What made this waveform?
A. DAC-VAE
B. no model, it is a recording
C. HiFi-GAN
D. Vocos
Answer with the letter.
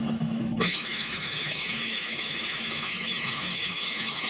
A